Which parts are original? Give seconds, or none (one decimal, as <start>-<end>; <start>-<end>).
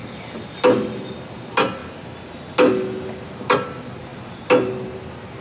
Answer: 0.0-5.4